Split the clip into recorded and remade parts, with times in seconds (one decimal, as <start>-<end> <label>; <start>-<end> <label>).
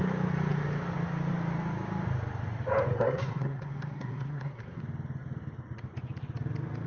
0.0-2.9 recorded; 2.9-4.8 remade; 4.8-6.9 recorded